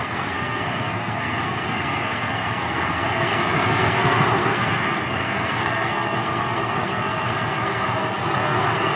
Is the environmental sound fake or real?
fake